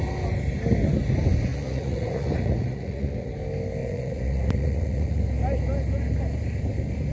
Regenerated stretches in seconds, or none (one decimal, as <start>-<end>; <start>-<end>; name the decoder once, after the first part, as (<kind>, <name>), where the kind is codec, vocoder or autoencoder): 1.5-3.3 (vocoder, Vocos); 3.8-5.2